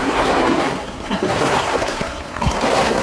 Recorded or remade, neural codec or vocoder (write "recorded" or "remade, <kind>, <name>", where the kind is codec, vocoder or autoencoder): remade, codec, SNAC